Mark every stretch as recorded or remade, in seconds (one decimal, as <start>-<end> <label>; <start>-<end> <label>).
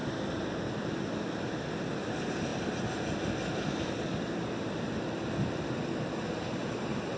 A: 0.0-7.2 recorded